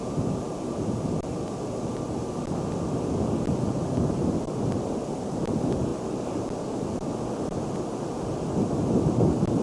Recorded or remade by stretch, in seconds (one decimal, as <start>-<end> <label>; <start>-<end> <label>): 0.0-5.9 recorded; 5.9-8.1 remade; 8.1-9.6 recorded